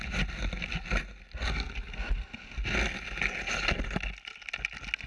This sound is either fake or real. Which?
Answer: real